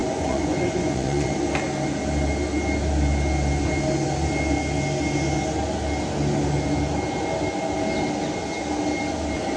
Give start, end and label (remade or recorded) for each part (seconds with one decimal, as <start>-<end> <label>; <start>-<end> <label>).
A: 0.0-1.3 remade; 1.3-9.6 recorded